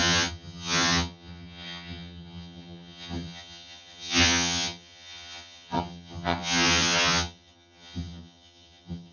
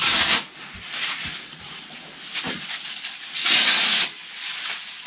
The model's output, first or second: first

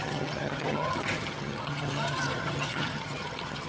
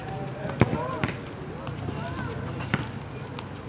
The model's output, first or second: first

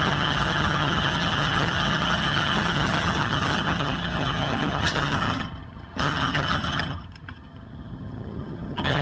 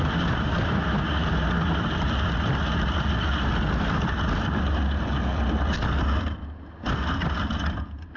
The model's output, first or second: first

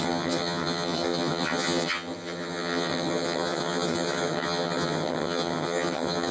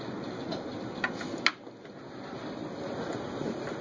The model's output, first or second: first